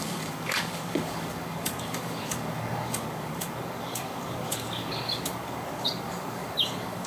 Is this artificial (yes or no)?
yes